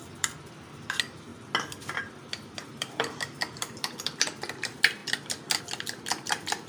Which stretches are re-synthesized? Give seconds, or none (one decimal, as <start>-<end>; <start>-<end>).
0.0-1.3; 1.9-5.0; 5.6-6.7